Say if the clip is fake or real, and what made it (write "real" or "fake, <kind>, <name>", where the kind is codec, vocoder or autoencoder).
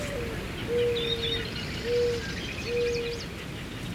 real